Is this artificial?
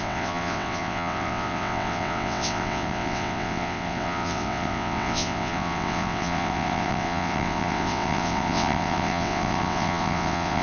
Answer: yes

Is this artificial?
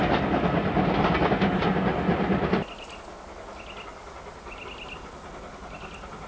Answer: no